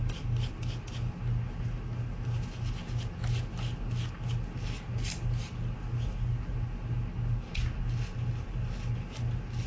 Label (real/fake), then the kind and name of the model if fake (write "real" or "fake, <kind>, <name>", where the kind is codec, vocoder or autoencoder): real